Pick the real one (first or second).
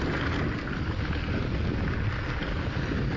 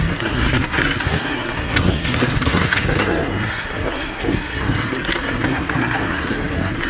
first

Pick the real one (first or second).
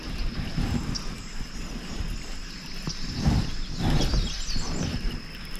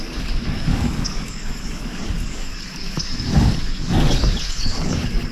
first